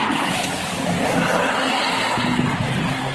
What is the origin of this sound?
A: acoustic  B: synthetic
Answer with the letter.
A